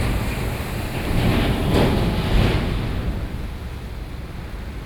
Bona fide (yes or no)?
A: yes